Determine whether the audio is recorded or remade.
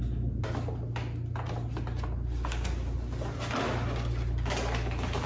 recorded